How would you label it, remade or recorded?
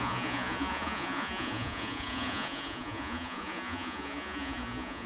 remade